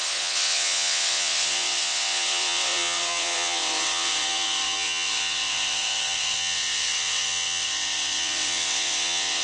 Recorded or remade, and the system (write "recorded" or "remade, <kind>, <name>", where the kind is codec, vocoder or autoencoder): remade, vocoder, WaveNeXt